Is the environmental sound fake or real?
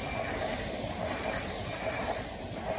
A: real